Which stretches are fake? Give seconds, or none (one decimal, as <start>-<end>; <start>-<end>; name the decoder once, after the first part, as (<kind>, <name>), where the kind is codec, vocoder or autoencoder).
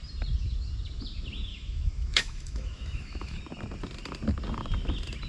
1.5-3.4 (autoencoder, DAC-VAE)